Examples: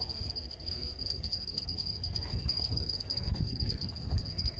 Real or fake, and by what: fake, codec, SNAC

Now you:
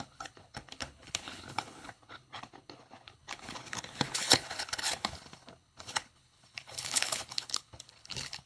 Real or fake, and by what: fake, codec, HILCodec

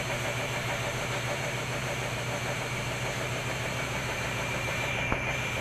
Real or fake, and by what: fake, vocoder, BigVGAN v2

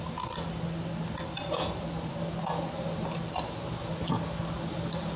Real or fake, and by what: real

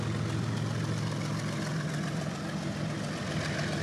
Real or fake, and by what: real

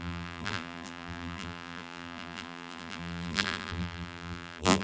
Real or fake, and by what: fake, vocoder, BigVGAN v2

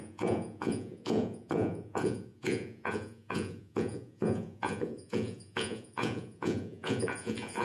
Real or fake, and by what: fake, vocoder, Vocos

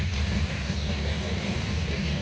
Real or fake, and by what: fake, codec, DAC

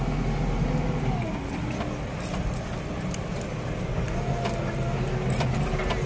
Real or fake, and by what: real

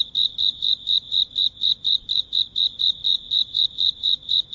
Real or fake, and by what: fake, vocoder, BigVGAN v2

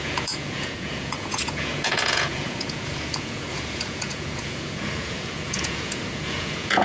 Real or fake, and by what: fake, vocoder, Vocos